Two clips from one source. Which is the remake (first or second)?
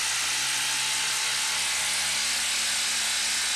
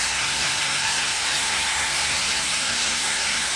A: second